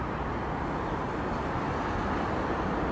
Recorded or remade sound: recorded